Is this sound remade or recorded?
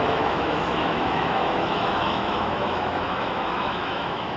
remade